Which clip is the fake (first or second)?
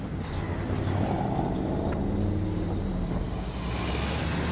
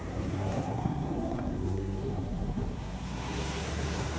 second